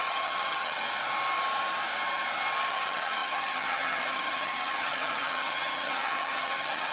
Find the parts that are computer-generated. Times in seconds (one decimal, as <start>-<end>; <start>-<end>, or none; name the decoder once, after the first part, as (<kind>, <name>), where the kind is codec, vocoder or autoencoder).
0.0-0.8 (vocoder, HiFi-GAN); 2.7-6.9